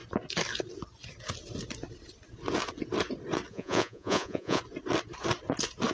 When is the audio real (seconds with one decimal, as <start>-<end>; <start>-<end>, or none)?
0.0-3.5; 4.6-5.9